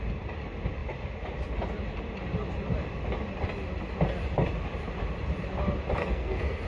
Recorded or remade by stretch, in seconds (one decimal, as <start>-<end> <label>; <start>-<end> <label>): 0.0-6.0 recorded; 6.0-6.7 remade